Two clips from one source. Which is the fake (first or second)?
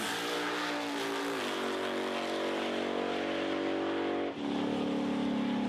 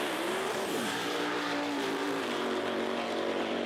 second